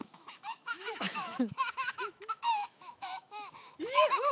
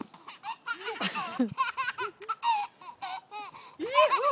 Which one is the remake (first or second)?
first